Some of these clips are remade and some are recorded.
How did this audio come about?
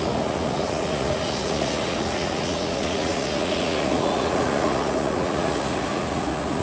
remade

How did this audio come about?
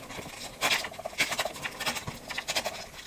recorded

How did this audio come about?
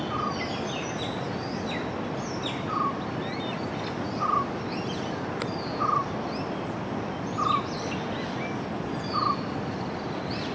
recorded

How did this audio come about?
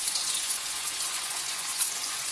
remade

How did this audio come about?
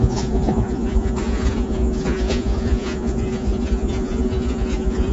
remade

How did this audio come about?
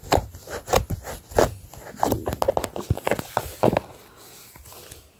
recorded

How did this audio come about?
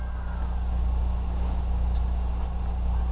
recorded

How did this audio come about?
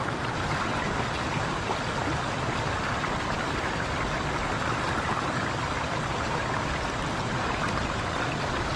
recorded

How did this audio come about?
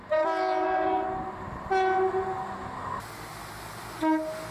recorded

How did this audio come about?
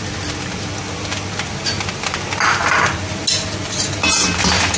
recorded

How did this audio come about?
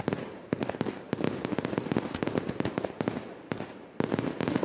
recorded